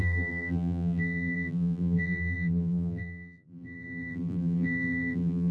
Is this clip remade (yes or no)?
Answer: yes